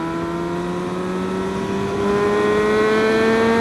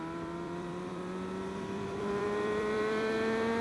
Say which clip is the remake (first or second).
second